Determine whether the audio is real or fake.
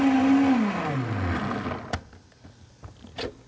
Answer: real